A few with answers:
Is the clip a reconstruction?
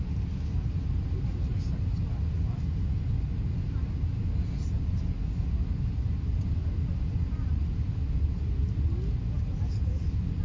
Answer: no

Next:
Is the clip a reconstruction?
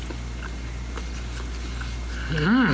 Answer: no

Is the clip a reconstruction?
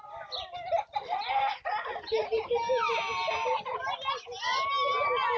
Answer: no